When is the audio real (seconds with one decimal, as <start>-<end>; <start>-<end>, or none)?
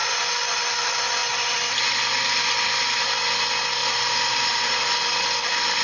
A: 0.0-3.8; 4.8-5.8